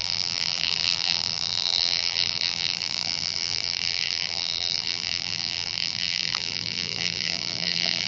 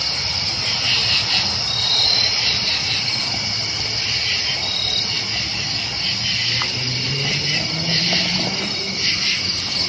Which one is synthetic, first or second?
first